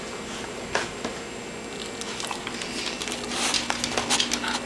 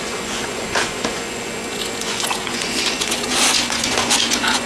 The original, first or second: first